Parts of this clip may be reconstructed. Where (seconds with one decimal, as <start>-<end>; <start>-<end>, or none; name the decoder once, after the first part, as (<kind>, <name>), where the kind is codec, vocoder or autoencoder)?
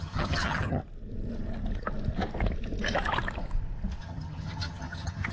0.0-0.8 (vocoder, HiFi-GAN); 4.0-5.3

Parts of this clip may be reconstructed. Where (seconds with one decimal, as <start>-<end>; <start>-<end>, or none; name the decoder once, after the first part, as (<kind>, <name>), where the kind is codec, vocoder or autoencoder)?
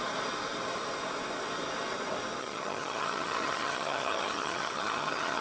2.4-5.4 (vocoder, HiFi-GAN)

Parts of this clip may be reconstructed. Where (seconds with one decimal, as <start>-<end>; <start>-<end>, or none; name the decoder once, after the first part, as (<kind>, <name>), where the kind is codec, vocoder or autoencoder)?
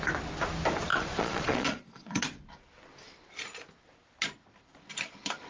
0.9-2.2 (vocoder, Vocos)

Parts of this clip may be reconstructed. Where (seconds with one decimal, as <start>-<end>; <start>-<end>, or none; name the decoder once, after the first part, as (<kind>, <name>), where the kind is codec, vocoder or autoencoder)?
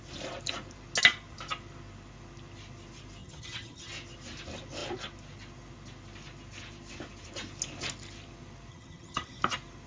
3.2-3.9 (vocoder, HiFi-GAN); 8.7-9.4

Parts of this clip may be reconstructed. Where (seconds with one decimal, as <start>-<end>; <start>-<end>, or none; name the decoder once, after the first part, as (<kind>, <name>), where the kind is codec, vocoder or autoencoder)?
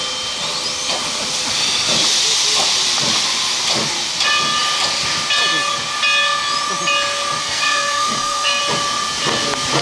7.4-8.6 (codec, SNAC)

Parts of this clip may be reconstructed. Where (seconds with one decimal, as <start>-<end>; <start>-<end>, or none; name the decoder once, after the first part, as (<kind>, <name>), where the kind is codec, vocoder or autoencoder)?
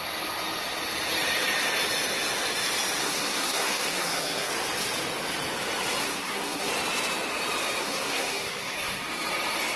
3.0-4.5 (codec, SNAC); 6.0-6.7; 7.8-9.0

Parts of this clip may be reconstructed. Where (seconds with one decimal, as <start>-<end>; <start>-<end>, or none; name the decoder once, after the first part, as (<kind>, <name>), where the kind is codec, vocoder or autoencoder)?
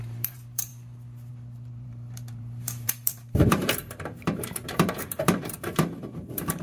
0.0-0.7 (vocoder, BigVGAN v2); 1.3-6.6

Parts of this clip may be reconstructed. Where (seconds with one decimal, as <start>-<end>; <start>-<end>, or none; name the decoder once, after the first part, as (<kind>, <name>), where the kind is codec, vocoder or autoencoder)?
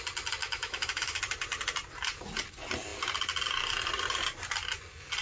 0.4-1.2 (autoencoder, DAC-VAE)